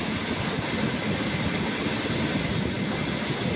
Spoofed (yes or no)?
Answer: no